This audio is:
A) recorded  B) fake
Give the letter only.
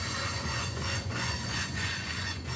B